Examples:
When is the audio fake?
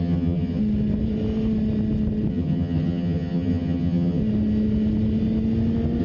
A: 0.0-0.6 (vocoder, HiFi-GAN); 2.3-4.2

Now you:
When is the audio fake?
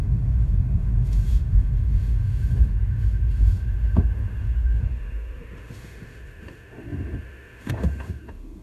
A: 0.0-8.6 (autoencoder, DAC-VAE)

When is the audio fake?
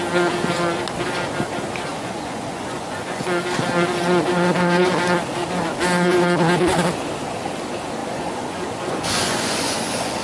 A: 1.9-3.4 (vocoder, Vocos); 8.0-10.2